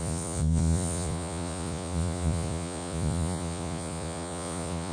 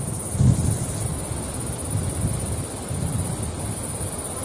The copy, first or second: first